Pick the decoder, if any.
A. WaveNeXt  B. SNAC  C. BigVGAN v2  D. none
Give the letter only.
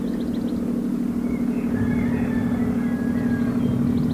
D